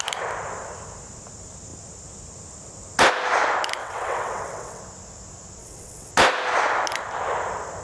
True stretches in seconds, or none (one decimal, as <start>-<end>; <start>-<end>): 0.0-3.8; 4.8-5.6; 6.1-7.8

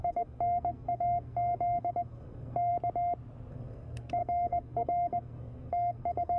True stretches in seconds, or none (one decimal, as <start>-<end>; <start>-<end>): 2.7-3.5